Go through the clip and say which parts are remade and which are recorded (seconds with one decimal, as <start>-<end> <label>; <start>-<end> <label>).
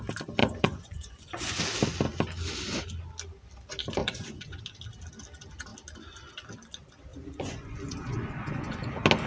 0.0-0.4 recorded; 0.4-1.6 remade; 1.6-4.0 recorded; 4.0-4.6 remade; 4.6-7.1 recorded; 7.1-8.9 remade; 8.9-9.3 recorded